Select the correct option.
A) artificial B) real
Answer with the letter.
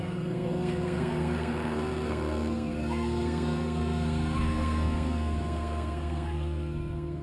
A